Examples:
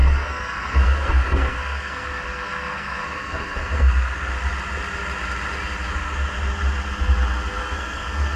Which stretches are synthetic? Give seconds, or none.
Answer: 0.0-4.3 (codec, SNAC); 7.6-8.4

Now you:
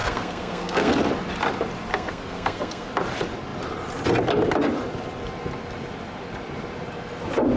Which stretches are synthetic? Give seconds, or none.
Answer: 0.0-0.9 (codec, SNAC); 1.9-2.9

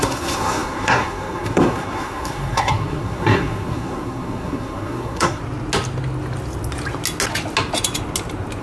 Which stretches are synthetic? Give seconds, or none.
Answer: 0.0-5.4 (codec, SNAC)